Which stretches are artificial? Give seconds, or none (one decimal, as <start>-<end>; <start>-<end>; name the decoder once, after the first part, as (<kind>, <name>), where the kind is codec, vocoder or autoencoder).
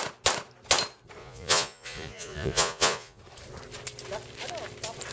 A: 1.2-3.2 (vocoder, Vocos)